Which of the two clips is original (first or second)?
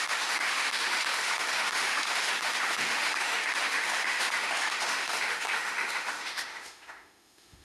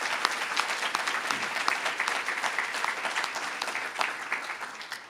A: second